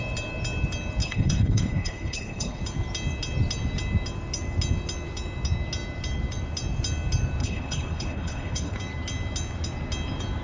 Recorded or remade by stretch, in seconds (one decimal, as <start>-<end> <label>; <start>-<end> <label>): 0.0-1.0 recorded; 1.0-2.6 remade; 2.6-7.4 recorded; 7.4-8.8 remade; 8.8-10.4 recorded